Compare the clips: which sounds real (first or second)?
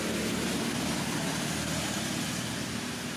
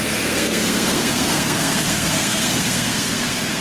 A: first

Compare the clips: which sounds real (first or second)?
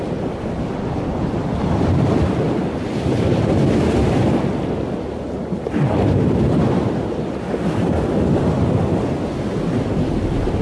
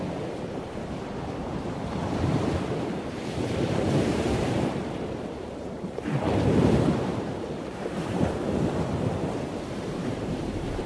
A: first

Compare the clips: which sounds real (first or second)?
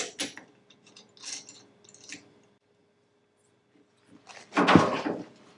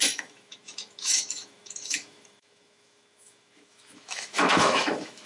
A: first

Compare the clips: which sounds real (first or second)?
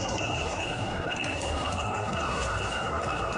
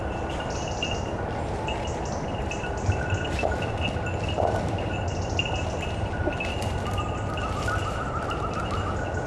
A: second